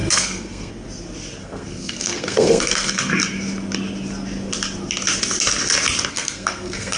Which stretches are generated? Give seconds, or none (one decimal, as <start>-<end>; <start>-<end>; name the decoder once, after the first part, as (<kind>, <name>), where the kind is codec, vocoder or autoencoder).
0.0-0.7 (codec, SNAC); 1.4-3.1; 6.1-7.0